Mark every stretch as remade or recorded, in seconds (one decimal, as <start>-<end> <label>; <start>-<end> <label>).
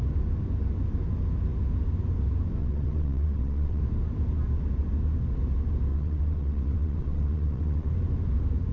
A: 0.0-2.6 recorded; 2.6-3.8 remade; 3.8-5.9 recorded; 5.9-7.9 remade; 7.9-8.7 recorded